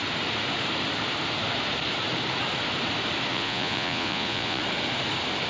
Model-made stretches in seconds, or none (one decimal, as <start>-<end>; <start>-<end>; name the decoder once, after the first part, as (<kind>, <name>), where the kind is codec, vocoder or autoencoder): 3.3-4.6 (vocoder, Vocos)

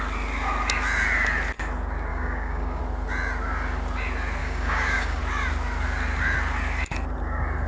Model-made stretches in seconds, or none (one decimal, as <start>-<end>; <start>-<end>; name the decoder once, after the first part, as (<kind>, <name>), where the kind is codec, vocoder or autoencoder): 2.1-2.8 (codec, DAC); 4.4-5.2

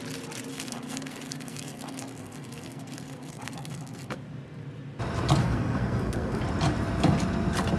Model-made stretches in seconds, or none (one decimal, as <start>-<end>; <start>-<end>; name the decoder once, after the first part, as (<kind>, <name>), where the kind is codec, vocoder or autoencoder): 0.5-4.2 (codec, SNAC); 5.4-6.4

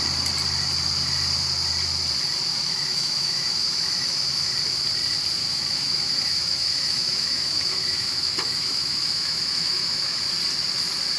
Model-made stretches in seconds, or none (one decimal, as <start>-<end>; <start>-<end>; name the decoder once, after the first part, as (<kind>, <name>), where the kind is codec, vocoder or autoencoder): 2.5-4.5 (autoencoder, DAC-VAE); 5.4-10.3

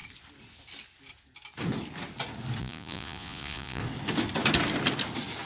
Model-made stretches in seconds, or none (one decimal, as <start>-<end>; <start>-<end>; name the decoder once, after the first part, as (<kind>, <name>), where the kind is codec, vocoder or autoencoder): 2.6-3.8 (vocoder, Vocos)

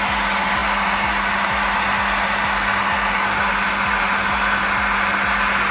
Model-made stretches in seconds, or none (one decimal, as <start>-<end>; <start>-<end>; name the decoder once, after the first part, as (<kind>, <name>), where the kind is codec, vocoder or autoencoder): none

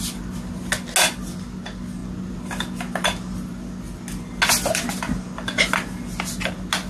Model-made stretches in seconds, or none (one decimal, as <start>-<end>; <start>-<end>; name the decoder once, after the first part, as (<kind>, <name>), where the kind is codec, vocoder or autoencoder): none